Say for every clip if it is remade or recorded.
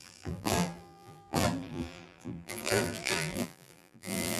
remade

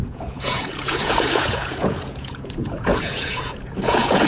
remade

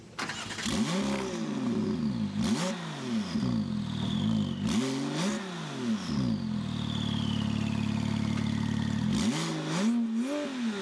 recorded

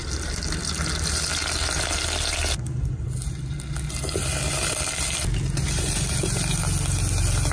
recorded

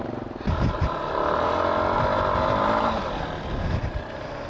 recorded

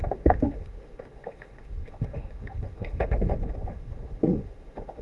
remade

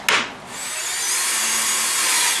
recorded